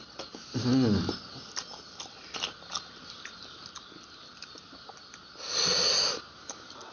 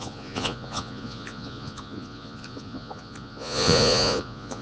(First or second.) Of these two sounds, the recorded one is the first